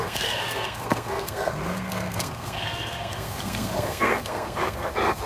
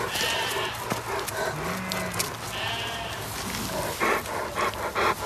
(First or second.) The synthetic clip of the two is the first